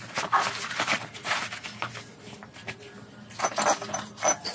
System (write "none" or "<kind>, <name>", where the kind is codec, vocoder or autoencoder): none